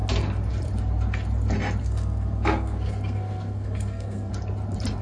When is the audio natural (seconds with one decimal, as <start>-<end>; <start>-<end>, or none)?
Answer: 0.0-1.8; 4.3-5.0